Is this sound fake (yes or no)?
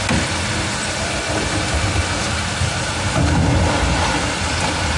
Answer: no